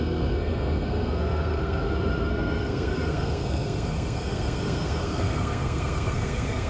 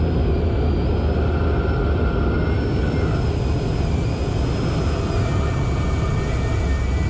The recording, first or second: second